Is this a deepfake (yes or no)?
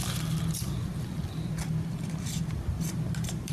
no